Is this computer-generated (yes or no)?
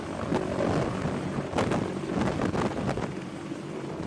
no